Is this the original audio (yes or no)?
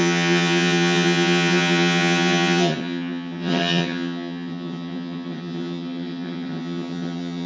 no